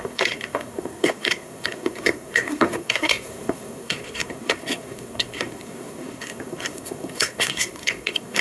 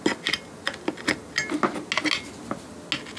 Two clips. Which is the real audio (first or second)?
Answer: second